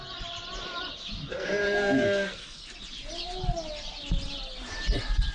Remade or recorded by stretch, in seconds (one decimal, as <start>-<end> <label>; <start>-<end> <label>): 0.0-1.3 recorded; 1.3-2.6 remade; 2.6-5.3 recorded